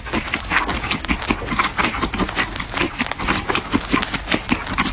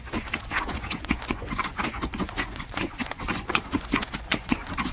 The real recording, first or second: first